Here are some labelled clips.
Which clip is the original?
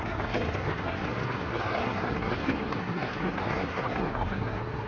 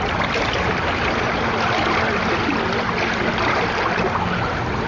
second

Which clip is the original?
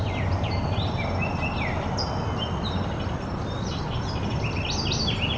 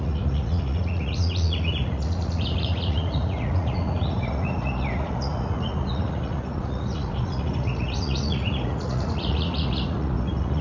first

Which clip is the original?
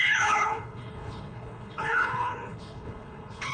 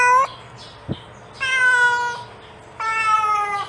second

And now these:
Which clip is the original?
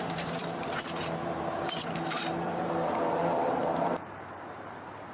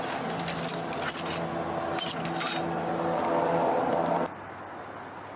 second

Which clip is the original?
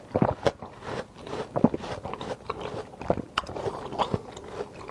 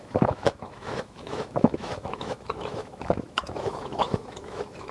first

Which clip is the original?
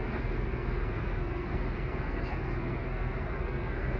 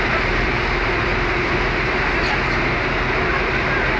second